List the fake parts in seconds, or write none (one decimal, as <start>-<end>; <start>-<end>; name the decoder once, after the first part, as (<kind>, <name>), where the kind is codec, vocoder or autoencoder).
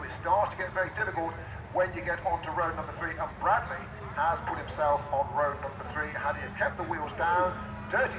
none